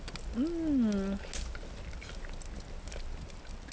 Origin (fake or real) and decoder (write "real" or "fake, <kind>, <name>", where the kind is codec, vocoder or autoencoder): real